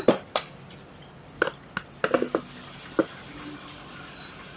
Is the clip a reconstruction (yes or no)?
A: no